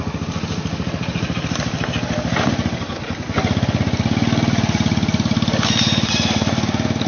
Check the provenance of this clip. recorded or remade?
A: recorded